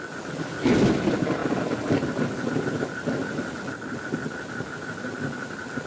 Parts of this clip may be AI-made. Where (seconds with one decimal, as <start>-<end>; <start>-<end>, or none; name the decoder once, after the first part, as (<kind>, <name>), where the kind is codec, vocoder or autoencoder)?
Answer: none